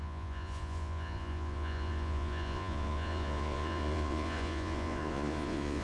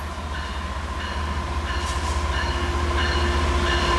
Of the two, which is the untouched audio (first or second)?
second